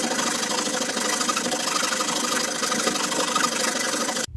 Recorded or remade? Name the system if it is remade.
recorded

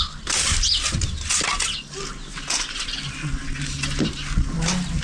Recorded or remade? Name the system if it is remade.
recorded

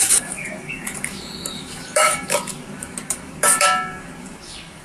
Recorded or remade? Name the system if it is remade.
remade, codec, DAC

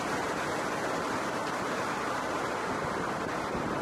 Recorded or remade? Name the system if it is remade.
remade, vocoder, BigVGAN v2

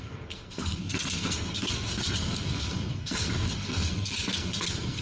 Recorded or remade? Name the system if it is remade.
remade, codec, SNAC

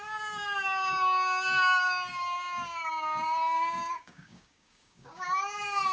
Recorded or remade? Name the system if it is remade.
remade, codec, DAC